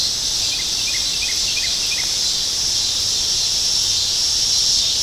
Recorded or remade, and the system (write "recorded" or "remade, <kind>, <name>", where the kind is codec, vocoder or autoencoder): recorded